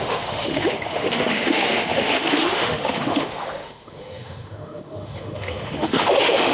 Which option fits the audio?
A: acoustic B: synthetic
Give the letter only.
B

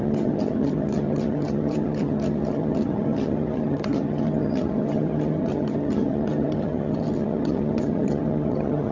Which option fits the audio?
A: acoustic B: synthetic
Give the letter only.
B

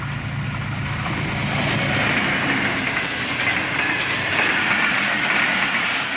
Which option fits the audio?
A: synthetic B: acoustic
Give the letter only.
B